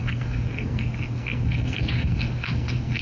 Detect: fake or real fake